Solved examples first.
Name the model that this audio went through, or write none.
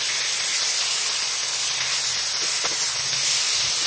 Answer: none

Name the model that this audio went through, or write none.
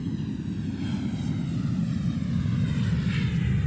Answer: none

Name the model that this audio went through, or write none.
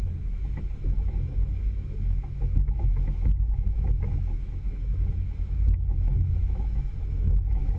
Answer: autoencoder, DAC-VAE